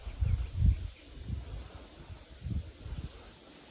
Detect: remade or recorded recorded